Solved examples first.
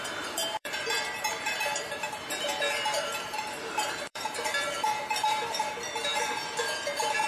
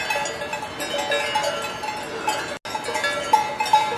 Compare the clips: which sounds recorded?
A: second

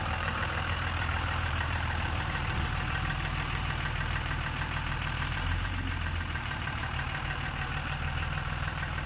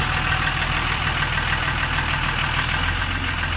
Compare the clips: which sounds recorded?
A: second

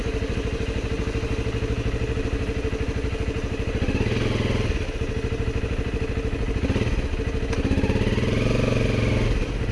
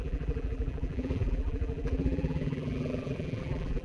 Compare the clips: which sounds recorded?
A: first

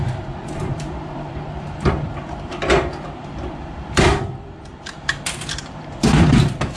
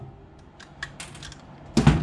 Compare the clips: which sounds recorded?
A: second